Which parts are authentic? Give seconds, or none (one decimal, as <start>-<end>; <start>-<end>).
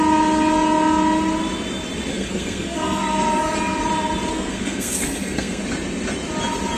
0.0-2.1; 3.4-4.3; 5.6-6.8